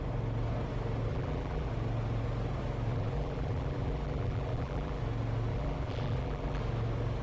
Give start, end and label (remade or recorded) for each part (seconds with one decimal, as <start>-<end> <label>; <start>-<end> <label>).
0.0-1.1 recorded; 1.1-1.7 remade; 1.7-2.9 recorded; 2.9-5.0 remade; 5.0-5.5 recorded; 5.5-6.6 remade; 6.6-7.2 recorded

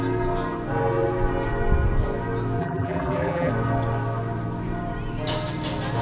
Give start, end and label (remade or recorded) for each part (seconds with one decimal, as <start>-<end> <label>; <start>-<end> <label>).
0.0-2.6 recorded; 2.6-3.5 remade; 3.5-6.0 recorded

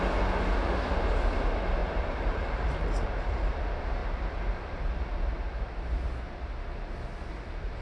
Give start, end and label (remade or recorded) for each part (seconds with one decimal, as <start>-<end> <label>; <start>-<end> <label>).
0.0-1.8 recorded; 1.8-3.2 remade; 3.2-7.8 recorded

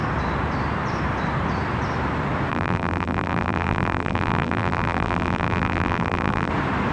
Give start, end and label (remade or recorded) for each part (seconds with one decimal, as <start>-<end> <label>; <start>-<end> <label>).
0.0-2.5 recorded; 2.5-6.5 remade; 6.5-6.9 recorded